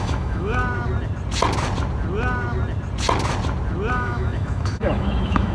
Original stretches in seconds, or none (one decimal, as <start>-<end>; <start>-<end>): 0.6-3.9